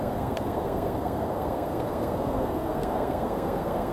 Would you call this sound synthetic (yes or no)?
yes